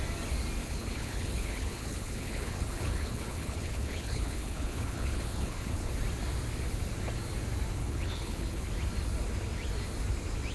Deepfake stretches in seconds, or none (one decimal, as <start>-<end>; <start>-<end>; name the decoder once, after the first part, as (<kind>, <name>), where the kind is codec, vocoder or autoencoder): 0.6-5.9 (codec, HILCodec); 7.8-8.7